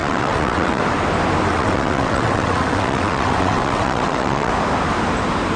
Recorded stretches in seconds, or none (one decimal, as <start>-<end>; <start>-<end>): 0.8-1.5; 4.5-5.6